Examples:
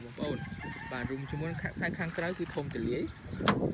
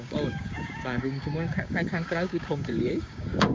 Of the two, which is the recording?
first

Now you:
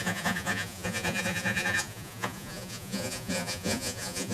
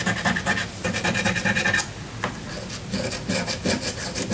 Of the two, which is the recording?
second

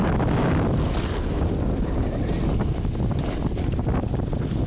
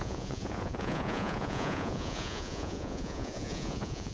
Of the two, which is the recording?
first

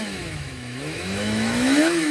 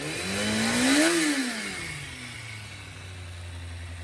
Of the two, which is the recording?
second